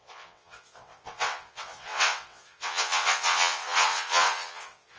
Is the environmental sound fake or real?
fake